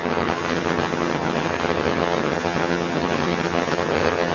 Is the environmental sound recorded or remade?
remade